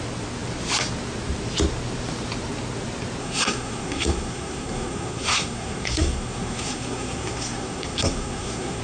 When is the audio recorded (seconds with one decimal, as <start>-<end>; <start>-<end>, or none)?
0.0-3.2